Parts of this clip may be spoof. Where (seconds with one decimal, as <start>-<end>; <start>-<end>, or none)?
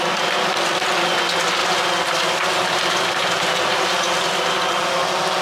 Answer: 1.6-4.8